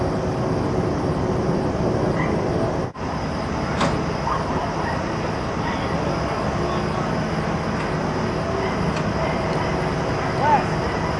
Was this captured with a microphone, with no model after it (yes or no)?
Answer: yes